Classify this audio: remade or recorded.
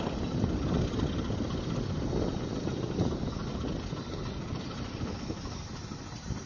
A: recorded